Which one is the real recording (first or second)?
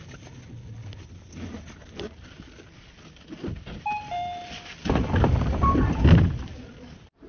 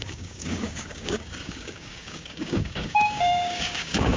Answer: first